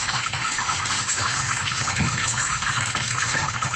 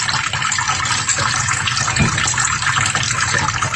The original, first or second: second